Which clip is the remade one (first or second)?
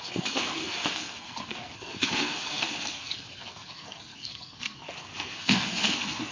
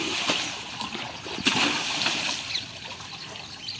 first